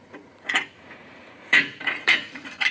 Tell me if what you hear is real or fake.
fake